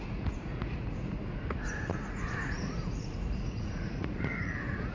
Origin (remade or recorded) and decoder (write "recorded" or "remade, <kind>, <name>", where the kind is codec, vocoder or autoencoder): remade, vocoder, Vocos